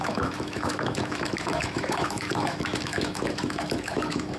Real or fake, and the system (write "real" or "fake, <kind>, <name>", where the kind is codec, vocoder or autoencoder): fake, autoencoder, DAC-VAE